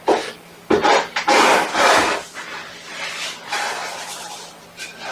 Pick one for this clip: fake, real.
real